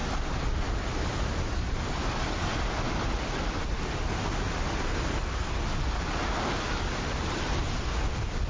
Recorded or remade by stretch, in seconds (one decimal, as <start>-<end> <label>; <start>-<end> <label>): 0.0-6.2 recorded; 6.2-7.8 remade; 7.8-8.5 recorded